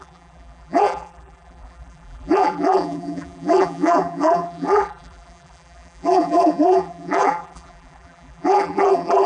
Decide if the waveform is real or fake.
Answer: fake